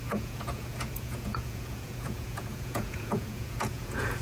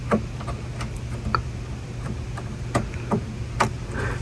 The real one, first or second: second